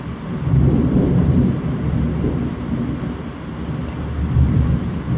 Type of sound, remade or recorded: remade